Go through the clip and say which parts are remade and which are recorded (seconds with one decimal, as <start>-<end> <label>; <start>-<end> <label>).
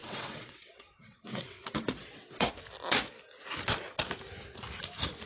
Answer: 0.0-2.5 remade; 2.5-5.3 recorded